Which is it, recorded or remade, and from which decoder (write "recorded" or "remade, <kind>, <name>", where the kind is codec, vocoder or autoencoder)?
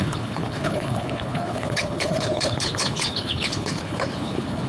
remade, codec, HILCodec